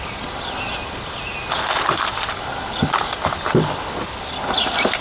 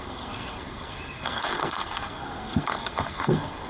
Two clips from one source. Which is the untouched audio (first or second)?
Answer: first